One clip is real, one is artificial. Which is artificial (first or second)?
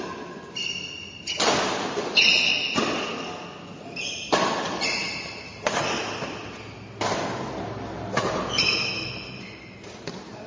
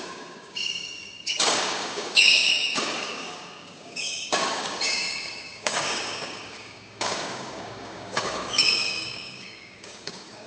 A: second